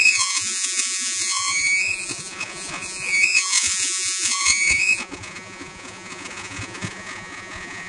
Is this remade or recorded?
remade